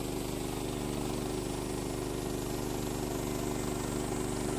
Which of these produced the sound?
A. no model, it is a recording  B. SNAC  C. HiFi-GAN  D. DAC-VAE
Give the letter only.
A